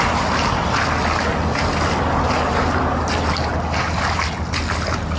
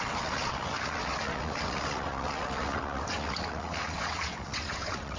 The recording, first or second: first